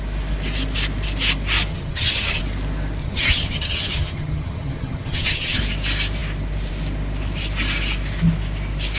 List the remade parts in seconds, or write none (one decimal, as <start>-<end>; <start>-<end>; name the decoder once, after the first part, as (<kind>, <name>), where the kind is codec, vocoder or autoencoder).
1.7-2.4 (vocoder, HiFi-GAN); 3.0-5.6